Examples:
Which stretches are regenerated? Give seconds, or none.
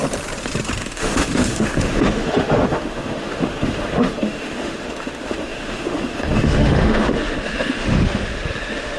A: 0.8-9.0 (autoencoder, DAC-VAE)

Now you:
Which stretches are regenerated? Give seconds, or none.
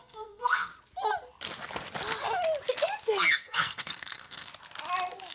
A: 0.0-0.7 (codec, SNAC); 3.3-4.5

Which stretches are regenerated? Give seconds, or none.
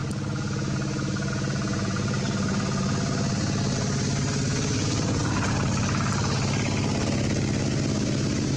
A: none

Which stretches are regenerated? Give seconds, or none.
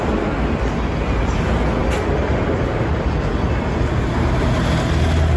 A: none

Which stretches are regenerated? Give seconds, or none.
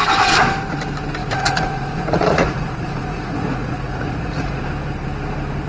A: 1.2-4.6 (vocoder, Vocos)